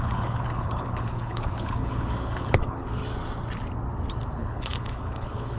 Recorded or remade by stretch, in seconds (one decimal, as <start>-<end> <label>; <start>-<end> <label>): 0.0-3.0 remade; 3.0-4.3 recorded; 4.3-5.6 remade

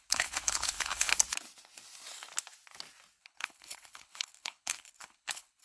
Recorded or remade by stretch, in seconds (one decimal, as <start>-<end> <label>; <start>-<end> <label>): 0.0-1.1 remade; 1.1-3.2 recorded; 3.2-5.6 remade

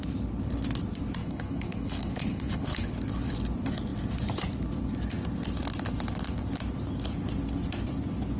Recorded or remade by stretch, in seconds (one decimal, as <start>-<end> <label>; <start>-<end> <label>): 0.0-1.2 recorded; 1.2-2.9 remade; 2.9-8.4 recorded

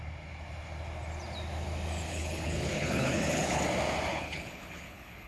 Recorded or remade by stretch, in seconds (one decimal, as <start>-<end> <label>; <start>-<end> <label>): 0.0-2.1 recorded; 2.1-3.6 remade; 3.6-4.1 recorded; 4.1-5.3 remade